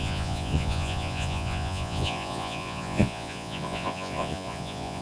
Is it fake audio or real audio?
fake